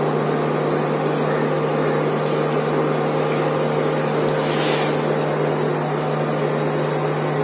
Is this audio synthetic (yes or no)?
no